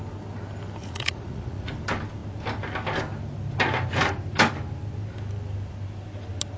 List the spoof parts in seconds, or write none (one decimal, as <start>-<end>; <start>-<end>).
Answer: 0.8-1.7